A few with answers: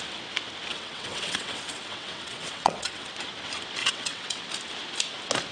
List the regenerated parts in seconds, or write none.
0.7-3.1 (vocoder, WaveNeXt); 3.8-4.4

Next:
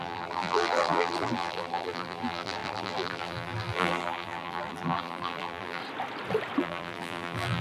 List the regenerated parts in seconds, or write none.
0.0-5.8 (vocoder, BigVGAN v2); 6.6-7.6

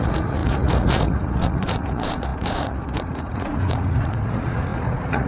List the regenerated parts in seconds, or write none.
0.0-5.3 (vocoder, Vocos)

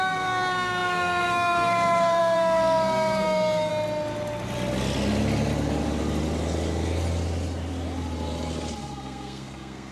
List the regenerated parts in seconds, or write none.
0.0-3.7 (codec, SNAC); 8.8-9.9

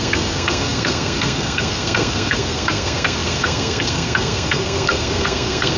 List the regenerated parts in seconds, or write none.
0.0-5.8 (codec, SNAC)

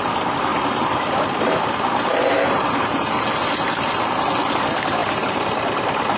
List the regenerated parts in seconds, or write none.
0.5-3.3 (vocoder, BigVGAN v2); 5.0-5.7

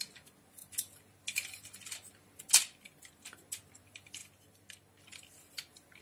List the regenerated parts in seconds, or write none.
none

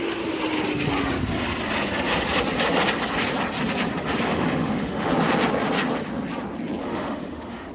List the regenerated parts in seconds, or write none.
4.3-5.1 (autoencoder, DAC-VAE); 6.8-7.7